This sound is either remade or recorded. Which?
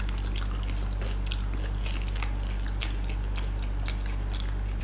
recorded